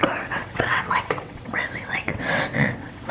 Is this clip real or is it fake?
fake